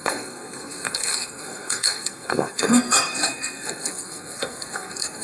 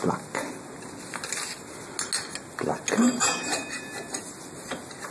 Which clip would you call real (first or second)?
second